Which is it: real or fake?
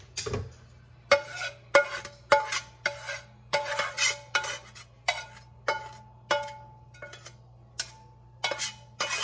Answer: real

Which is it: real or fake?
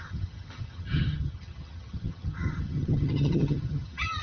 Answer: fake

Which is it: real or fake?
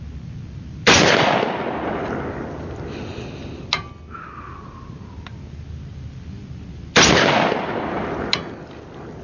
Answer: real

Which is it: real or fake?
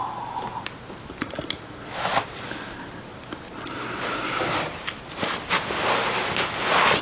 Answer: real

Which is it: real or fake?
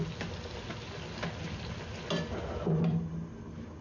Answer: real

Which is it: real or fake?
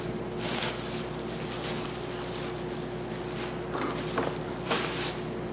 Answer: real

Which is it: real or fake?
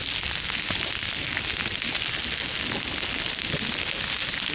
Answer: real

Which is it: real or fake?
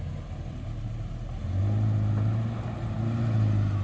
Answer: real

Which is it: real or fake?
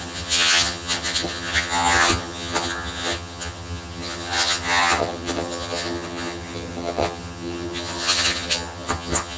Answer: fake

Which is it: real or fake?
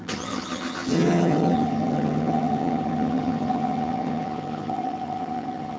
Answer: fake